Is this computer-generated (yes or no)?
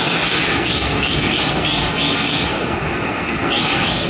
yes